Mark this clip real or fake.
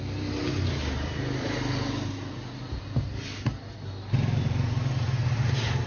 real